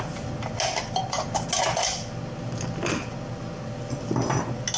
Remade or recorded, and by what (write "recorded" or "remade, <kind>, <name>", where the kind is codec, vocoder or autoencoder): recorded